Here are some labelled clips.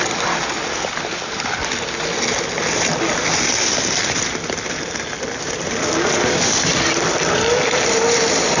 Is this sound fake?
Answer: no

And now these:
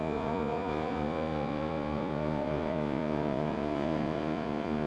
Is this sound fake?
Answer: yes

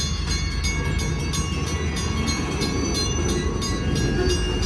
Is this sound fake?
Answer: no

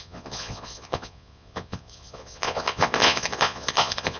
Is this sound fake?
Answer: yes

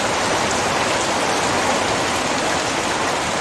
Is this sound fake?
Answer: no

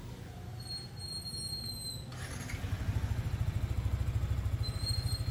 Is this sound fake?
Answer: no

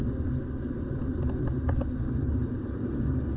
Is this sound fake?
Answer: no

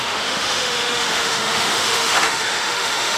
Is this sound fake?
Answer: yes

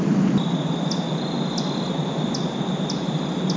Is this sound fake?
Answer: no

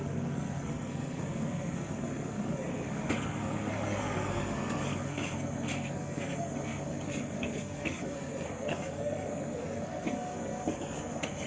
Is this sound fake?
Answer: yes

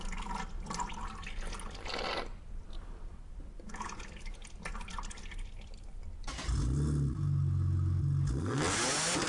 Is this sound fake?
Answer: no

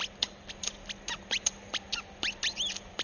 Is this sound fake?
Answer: no